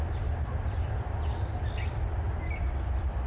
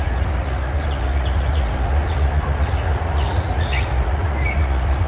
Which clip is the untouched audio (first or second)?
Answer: first